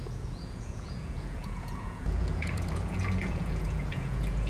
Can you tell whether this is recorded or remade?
remade